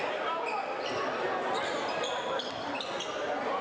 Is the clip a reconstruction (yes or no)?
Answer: no